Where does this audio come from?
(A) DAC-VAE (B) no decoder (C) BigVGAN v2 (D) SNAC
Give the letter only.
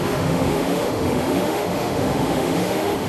A